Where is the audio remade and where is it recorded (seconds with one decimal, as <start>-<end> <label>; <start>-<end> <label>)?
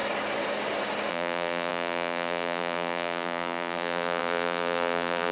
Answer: 0.0-1.1 recorded; 1.1-5.3 remade